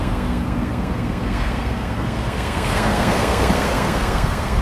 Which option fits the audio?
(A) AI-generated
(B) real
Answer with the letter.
A